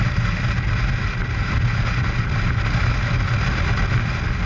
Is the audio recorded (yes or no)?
yes